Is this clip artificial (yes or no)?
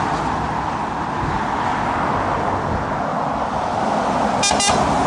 no